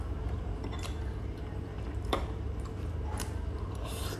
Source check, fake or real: fake